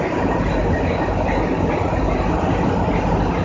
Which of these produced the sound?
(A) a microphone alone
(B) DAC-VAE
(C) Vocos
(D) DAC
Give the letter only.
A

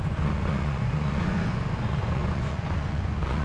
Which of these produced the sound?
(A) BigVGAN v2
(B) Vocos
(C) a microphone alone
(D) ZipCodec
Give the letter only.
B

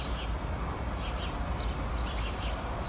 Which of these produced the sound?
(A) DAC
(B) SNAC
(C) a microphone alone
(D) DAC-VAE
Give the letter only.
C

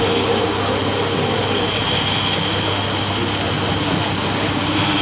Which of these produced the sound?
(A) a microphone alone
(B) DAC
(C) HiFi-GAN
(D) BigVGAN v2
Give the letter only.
A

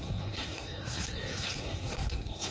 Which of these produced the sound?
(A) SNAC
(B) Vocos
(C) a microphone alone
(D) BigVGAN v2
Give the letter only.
A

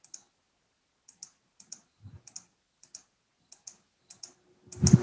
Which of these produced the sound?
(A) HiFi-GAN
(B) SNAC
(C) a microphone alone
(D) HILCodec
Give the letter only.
C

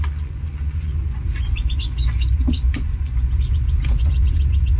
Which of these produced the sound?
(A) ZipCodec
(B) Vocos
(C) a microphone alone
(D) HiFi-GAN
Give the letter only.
B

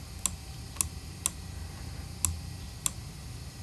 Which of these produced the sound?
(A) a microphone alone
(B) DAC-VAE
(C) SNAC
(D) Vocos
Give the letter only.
A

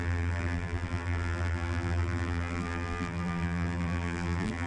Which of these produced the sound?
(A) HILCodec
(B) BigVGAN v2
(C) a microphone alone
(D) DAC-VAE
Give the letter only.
B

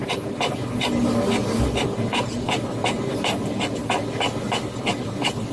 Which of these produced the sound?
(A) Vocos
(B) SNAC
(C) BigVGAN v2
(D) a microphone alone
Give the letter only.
D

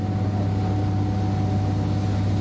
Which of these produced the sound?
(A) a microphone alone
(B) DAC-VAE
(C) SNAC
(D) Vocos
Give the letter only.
A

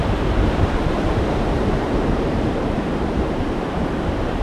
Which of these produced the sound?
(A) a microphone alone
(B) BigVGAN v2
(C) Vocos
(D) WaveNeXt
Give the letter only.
B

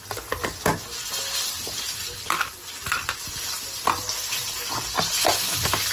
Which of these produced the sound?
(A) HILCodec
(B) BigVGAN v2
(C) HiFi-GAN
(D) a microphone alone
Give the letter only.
D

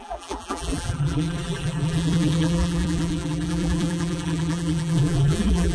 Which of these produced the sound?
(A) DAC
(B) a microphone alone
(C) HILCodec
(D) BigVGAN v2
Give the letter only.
D